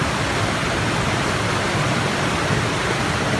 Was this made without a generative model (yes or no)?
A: yes